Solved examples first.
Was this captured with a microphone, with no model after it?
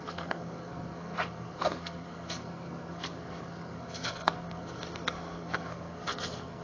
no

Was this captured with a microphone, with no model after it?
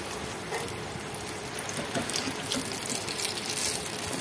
yes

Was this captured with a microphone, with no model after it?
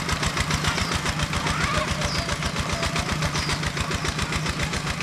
yes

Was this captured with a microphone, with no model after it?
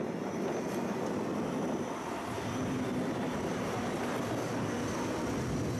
yes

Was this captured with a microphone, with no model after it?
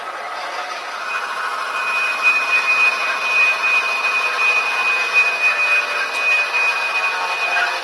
yes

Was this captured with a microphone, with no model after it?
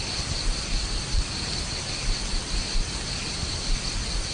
yes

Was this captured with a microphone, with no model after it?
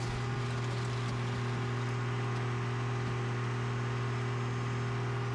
yes